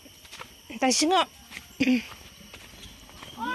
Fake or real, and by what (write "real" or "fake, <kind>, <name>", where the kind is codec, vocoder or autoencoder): real